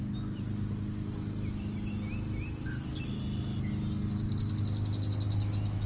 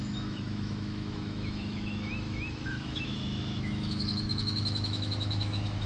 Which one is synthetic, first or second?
second